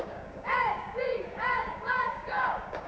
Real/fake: fake